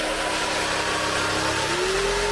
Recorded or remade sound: recorded